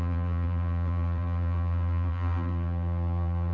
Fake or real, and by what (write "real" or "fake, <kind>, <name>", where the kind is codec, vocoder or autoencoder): fake, vocoder, BigVGAN v2